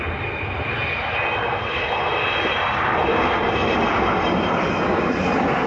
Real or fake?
real